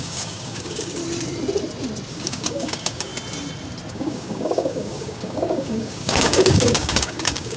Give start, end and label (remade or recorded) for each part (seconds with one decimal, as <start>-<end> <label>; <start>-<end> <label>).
0.0-1.0 remade; 1.0-2.1 recorded; 2.1-3.1 remade; 3.1-3.9 recorded; 3.9-7.6 remade